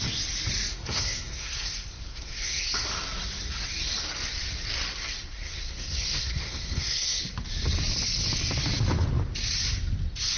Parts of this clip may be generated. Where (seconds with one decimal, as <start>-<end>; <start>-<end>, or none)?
0.7-2.7; 5.3-7.2